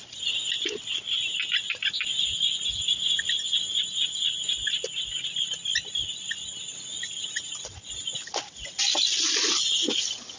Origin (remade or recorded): recorded